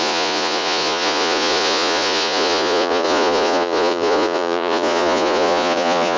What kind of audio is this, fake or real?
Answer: fake